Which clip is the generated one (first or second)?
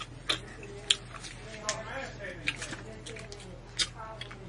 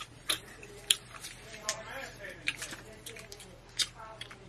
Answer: second